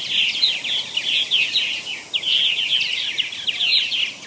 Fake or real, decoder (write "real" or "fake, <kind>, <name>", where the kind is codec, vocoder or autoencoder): real